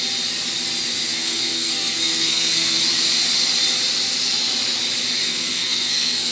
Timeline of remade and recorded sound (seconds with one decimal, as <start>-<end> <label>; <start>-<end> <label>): 0.0-1.1 recorded; 1.1-2.8 remade; 2.8-5.2 recorded; 5.2-6.3 remade